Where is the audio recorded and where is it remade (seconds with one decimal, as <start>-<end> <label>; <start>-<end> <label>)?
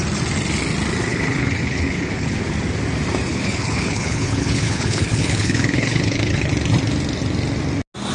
0.0-1.1 recorded; 1.1-2.4 remade; 2.4-3.3 recorded; 3.3-6.5 remade; 6.5-8.1 recorded